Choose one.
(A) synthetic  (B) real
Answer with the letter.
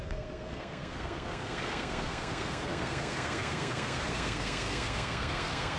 A